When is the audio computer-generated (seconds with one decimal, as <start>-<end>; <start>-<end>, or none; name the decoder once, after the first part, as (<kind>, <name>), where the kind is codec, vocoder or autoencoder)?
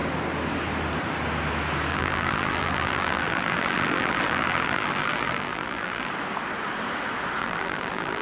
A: 1.9-6.1 (vocoder, BigVGAN v2); 7.4-8.2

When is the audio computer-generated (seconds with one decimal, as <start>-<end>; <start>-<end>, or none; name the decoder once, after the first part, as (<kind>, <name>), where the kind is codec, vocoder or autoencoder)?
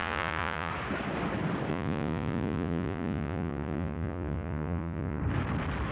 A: 0.0-0.7 (vocoder, Vocos); 1.7-5.2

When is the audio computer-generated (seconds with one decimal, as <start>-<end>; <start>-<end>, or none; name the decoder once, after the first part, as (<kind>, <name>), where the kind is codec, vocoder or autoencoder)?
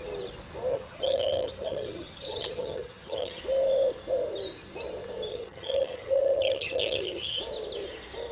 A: 0.7-3.4 (vocoder, HiFi-GAN); 5.3-7.4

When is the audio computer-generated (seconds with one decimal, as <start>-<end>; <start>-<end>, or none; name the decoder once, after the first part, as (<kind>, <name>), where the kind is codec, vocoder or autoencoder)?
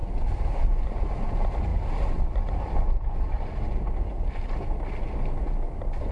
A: none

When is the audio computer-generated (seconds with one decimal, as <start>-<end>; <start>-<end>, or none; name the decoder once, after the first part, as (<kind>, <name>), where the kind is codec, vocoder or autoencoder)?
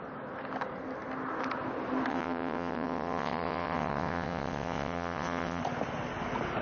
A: 2.1-5.6 (vocoder, WaveNeXt)